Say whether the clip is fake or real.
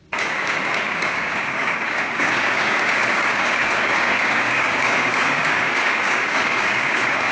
fake